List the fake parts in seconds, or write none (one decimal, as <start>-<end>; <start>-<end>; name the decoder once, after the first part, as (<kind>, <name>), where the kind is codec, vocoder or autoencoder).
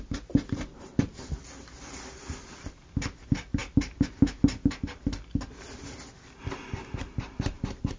none